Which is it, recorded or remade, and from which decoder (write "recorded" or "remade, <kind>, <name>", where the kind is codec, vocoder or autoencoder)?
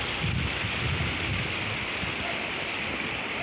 recorded